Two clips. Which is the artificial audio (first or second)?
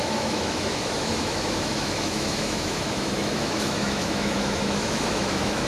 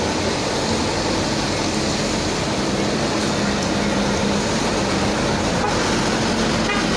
first